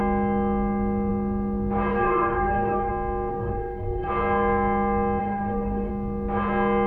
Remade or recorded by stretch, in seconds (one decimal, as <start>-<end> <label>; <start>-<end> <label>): 0.0-1.9 recorded; 1.9-2.9 remade; 2.9-3.3 recorded; 3.3-4.1 remade; 4.1-5.2 recorded; 5.2-5.9 remade; 5.9-6.9 recorded